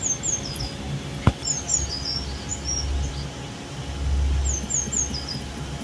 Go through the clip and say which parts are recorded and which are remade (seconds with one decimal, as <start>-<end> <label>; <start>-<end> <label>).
0.0-5.8 recorded